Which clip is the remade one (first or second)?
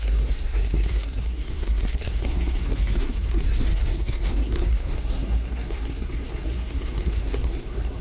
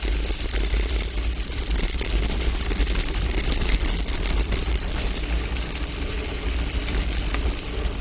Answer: first